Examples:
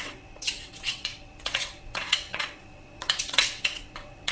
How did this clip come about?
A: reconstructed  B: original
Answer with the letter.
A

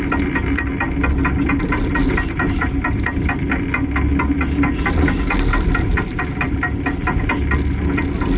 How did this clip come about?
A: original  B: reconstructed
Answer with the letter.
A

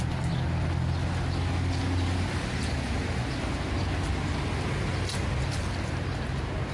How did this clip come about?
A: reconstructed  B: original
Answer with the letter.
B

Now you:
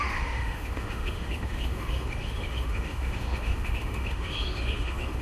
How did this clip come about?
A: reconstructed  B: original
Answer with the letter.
A